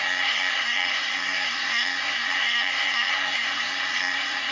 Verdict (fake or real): fake